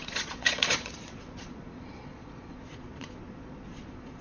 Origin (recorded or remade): remade